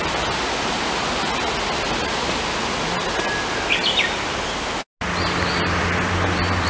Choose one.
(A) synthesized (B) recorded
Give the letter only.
B